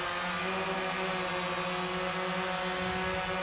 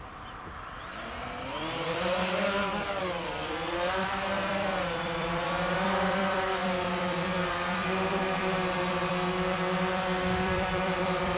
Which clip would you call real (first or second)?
first